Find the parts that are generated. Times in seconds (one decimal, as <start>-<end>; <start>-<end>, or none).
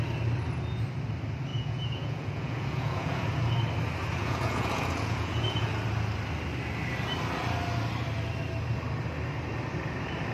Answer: 1.5-3.2; 4.2-5.7